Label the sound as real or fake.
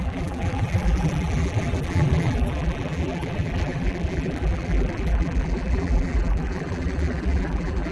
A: fake